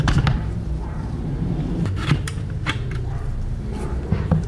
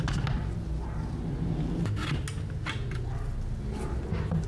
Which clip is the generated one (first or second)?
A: first